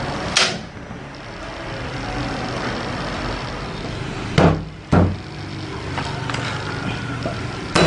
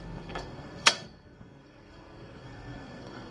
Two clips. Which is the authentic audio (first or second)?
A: first